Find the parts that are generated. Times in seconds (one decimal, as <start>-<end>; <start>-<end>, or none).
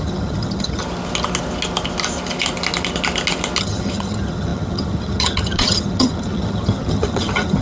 0.0-0.8; 3.6-7.6